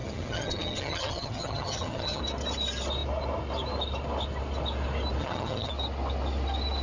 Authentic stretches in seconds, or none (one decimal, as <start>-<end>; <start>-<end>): 2.2-5.2; 5.7-6.8